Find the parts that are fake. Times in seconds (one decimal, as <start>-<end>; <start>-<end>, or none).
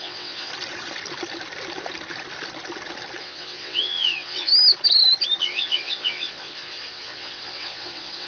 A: 0.0-0.5; 3.2-4.5; 5.4-8.3